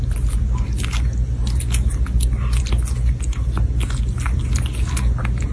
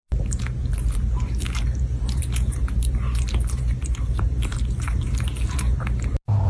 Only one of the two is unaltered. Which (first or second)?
first